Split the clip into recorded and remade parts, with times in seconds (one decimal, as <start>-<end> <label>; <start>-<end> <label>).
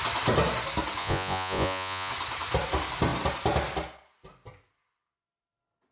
0.0-1.0 recorded; 1.0-2.1 remade; 2.1-5.9 recorded